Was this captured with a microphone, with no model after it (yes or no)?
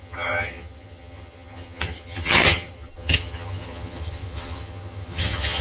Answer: no